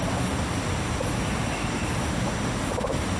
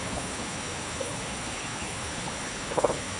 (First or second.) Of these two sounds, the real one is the first